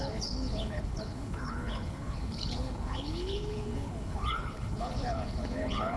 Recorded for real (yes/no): no